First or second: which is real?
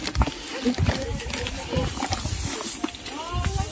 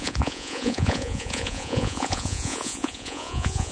first